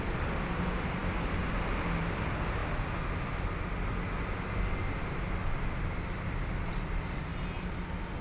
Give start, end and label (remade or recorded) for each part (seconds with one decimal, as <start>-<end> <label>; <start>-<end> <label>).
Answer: 0.0-8.2 recorded